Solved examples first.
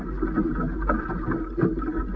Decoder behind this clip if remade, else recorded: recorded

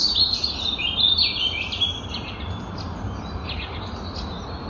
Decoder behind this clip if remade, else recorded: recorded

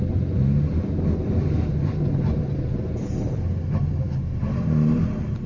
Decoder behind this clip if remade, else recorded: recorded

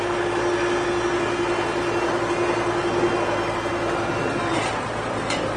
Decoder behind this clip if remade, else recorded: recorded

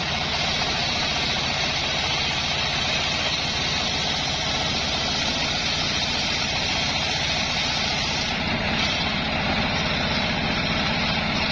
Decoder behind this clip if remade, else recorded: remade, vocoder, BigVGAN v2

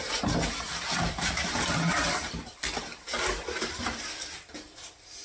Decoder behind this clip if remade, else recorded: remade, vocoder, BigVGAN v2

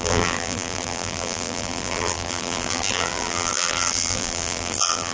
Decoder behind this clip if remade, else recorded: remade, vocoder, BigVGAN v2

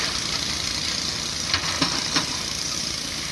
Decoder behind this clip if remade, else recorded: remade, vocoder, BigVGAN v2